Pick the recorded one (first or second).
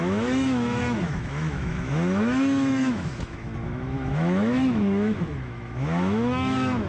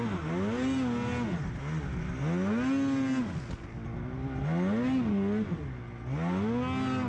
second